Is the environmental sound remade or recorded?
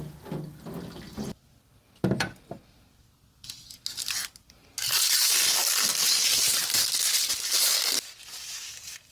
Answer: recorded